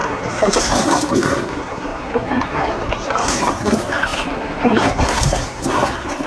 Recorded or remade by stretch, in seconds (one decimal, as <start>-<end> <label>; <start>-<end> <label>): 0.0-6.3 remade